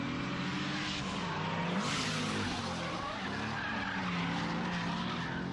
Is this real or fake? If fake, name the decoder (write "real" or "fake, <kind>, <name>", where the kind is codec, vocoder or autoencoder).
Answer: real